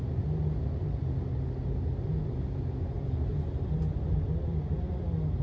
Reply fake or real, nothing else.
real